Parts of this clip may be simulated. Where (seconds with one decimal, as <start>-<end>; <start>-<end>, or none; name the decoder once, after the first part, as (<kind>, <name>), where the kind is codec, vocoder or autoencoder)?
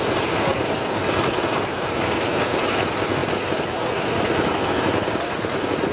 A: 0.5-2.4 (vocoder, BigVGAN v2)